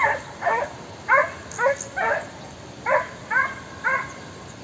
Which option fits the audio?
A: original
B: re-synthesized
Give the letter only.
A